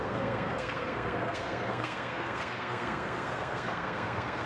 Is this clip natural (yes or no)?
no